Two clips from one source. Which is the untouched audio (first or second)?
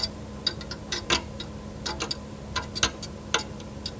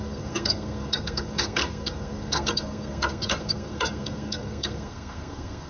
first